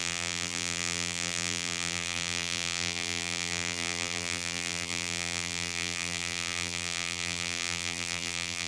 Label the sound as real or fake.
fake